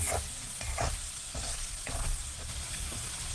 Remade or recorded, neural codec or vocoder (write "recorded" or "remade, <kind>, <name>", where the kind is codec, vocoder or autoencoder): remade, vocoder, Vocos